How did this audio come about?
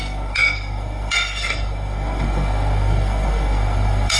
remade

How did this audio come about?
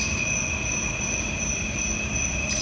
recorded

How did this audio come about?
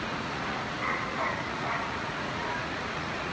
remade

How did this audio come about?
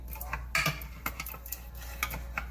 recorded